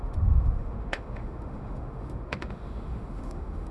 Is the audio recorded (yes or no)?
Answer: no